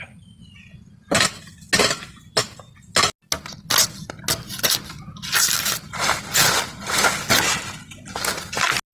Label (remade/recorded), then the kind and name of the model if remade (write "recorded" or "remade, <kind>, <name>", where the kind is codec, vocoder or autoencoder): recorded